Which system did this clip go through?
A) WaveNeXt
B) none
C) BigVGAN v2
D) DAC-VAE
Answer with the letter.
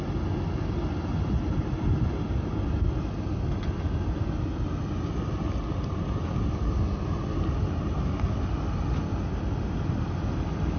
B